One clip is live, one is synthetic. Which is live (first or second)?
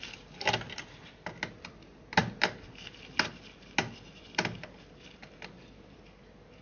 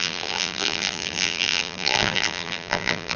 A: first